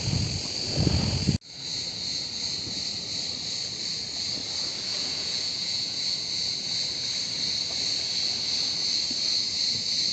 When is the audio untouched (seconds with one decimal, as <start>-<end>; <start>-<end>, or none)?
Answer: 0.0-4.9; 6.0-10.1